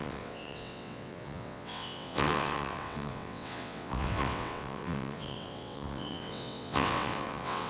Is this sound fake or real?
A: fake